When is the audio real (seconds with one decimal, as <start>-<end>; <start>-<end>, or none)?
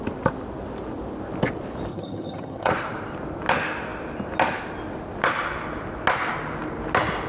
0.0-1.9; 2.7-7.3